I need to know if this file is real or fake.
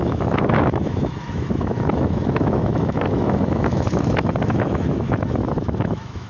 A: fake